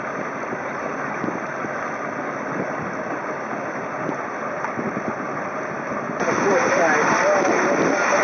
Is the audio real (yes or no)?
yes